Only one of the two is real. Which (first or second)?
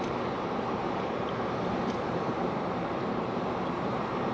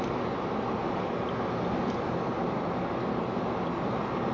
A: second